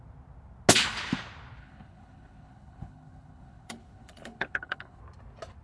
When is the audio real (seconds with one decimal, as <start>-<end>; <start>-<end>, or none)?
0.0-1.6; 5.0-5.6